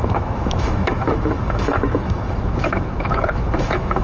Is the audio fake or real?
fake